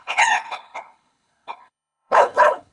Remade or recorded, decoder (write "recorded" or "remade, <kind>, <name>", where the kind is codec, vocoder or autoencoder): remade, codec, HILCodec